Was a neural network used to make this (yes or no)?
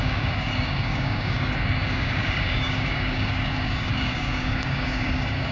yes